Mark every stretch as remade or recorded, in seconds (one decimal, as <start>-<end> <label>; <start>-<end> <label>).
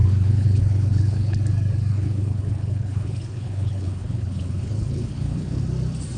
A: 0.0-1.4 remade; 1.4-1.9 recorded; 1.9-5.6 remade; 5.6-6.2 recorded